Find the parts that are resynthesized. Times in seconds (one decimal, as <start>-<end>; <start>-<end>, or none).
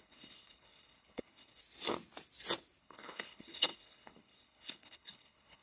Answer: 0.0-1.6; 2.8-5.6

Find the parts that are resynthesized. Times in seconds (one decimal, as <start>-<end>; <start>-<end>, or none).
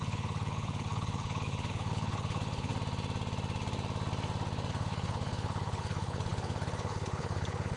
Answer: 0.0-2.7; 4.7-7.8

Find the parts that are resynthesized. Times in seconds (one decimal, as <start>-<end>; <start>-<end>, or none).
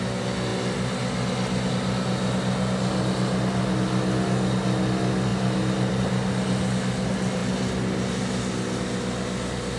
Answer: none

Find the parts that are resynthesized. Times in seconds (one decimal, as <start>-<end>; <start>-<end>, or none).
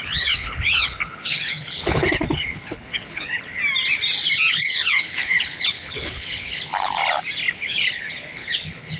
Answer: 0.0-3.6; 4.5-7.0; 7.5-9.0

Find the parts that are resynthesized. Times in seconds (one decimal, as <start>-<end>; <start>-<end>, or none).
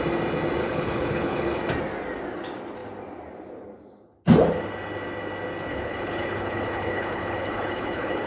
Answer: 0.6-1.6; 5.7-8.3